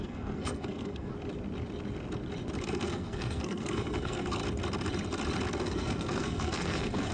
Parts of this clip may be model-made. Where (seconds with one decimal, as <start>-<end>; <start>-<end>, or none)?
0.0-1.1; 2.7-4.4; 5.5-7.1

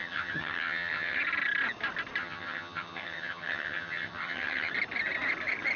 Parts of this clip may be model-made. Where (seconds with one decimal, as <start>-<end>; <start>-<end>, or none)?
0.0-1.2; 2.2-4.7

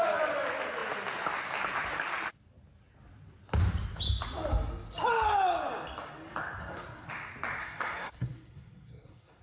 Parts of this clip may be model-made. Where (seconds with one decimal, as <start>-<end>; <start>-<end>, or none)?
6.6-7.1; 7.6-9.4

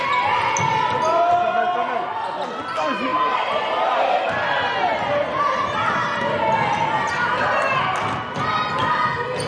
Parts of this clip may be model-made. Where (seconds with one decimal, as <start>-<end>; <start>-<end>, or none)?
none

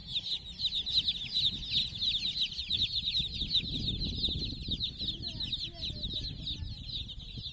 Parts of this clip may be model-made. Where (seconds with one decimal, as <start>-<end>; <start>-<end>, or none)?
none

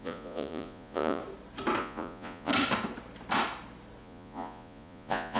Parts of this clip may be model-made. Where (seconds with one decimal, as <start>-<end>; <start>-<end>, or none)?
0.0-1.2; 1.8-2.5; 4.0-5.4

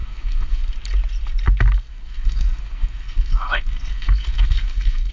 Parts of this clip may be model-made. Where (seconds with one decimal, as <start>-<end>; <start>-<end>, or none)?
0.0-0.6; 1.9-5.1

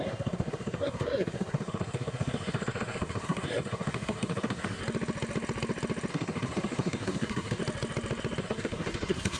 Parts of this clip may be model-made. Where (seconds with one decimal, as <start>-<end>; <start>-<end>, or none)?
0.0-4.8; 6.1-7.6; 8.4-9.4